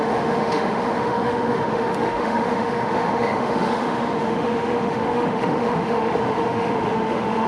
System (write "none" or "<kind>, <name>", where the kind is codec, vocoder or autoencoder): autoencoder, DAC-VAE